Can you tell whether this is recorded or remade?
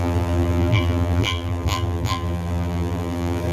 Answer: remade